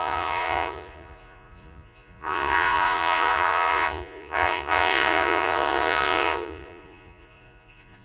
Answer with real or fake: fake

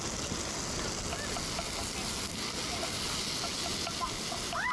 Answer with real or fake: real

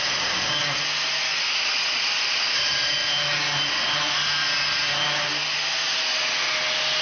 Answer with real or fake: real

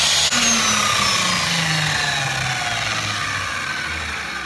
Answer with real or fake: real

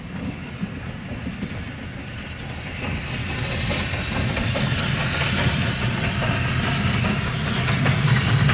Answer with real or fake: real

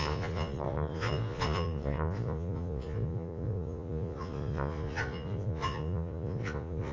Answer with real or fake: fake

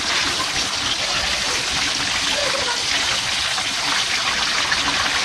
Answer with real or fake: real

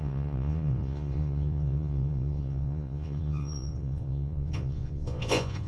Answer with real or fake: fake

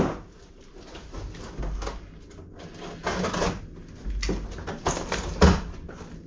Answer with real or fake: real